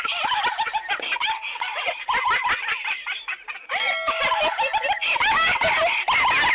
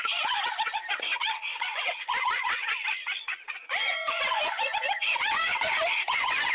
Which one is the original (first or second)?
first